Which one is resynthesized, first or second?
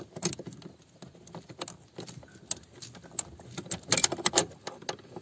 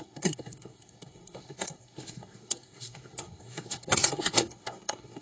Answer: second